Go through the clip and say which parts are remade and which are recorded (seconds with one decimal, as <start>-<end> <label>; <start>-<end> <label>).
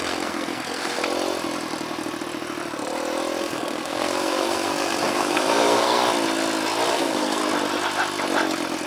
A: 0.0-1.0 remade; 1.0-3.4 recorded; 3.4-6.0 remade; 6.0-6.9 recorded; 6.9-7.4 remade; 7.4-8.9 recorded